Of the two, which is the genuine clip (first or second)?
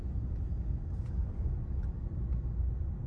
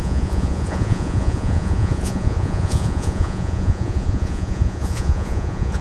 first